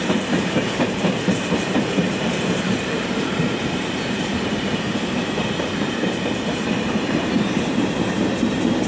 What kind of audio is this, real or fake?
fake